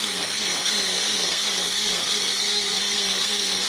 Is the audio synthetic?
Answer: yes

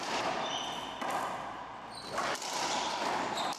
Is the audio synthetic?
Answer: no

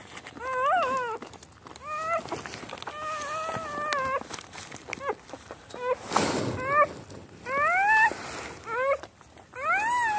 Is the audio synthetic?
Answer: no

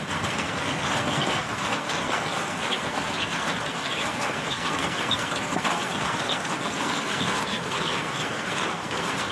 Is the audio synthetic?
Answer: yes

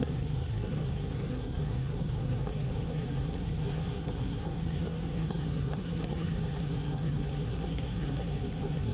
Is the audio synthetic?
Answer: yes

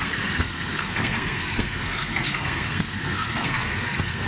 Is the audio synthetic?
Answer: yes